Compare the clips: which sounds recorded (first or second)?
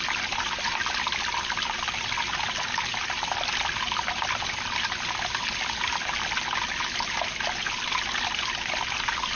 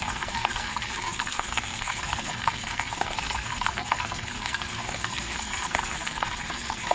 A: first